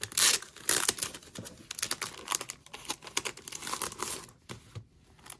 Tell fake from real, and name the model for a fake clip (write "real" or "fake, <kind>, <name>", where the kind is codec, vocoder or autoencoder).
real